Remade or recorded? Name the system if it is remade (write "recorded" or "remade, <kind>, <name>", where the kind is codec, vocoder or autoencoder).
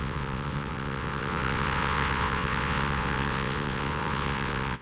remade, vocoder, WaveNeXt